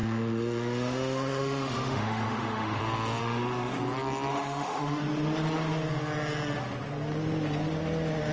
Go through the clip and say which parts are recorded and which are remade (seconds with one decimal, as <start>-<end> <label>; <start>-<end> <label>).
0.0-2.8 remade; 2.8-3.2 recorded; 3.2-3.8 remade; 3.8-4.3 recorded; 4.3-5.0 remade; 5.0-8.3 recorded